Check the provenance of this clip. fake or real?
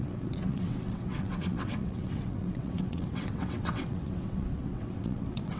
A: fake